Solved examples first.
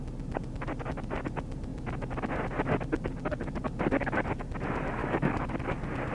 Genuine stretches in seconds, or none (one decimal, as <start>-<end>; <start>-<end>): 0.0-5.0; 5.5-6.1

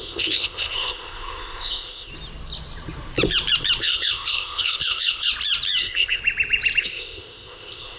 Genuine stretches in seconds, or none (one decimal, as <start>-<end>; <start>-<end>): 2.1-3.8; 5.3-5.8; 6.2-6.8

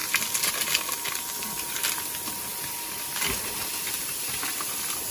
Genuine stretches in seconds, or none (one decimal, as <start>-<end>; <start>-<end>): 0.0-5.1